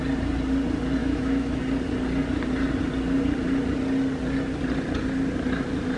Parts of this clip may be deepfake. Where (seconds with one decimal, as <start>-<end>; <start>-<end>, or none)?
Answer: 1.0-1.6